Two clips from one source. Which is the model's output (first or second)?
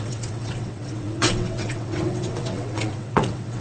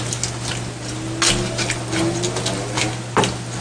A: first